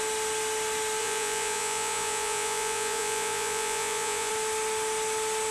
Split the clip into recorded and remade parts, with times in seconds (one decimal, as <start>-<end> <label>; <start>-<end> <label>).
0.0-1.0 recorded; 1.0-4.3 remade; 4.3-5.5 recorded

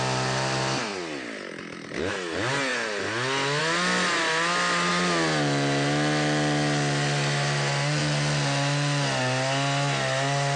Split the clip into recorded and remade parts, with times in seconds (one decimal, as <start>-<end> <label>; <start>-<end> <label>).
0.0-10.6 recorded

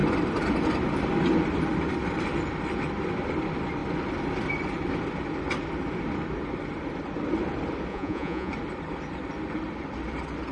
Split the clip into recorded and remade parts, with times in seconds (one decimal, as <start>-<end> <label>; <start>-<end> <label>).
0.0-7.9 recorded; 7.9-8.5 remade; 8.5-10.5 recorded